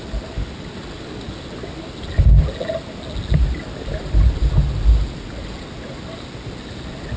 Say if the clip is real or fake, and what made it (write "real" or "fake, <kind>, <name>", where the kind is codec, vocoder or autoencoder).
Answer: real